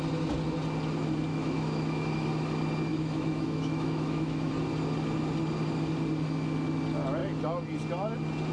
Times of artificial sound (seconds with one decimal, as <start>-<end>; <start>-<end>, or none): 1.3-2.3; 2.9-4.5